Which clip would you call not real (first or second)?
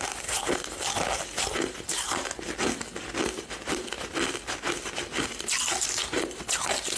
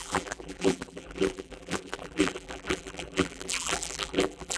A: second